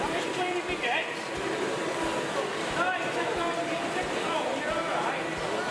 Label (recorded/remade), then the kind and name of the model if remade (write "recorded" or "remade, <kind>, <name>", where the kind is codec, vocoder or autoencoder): recorded